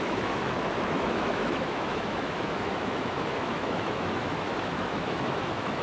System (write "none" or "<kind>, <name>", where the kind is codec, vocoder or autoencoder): autoencoder, DAC-VAE